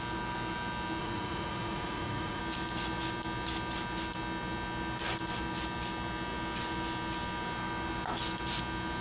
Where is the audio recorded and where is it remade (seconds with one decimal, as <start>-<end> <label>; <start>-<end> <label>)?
0.0-1.0 recorded; 1.0-2.4 remade; 2.4-9.0 recorded